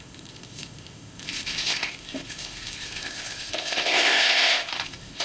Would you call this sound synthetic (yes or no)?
yes